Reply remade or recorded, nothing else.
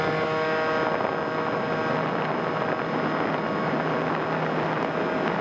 recorded